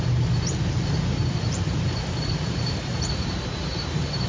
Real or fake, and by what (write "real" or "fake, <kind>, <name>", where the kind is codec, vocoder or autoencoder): fake, vocoder, BigVGAN v2